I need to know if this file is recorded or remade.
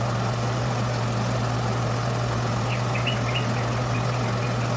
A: recorded